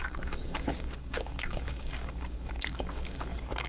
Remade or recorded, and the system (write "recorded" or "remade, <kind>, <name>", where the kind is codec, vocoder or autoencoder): remade, codec, DAC